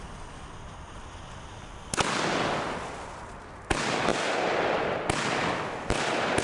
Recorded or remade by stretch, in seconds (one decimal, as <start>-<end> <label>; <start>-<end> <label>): 0.0-6.4 recorded